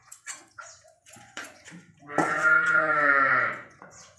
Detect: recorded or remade remade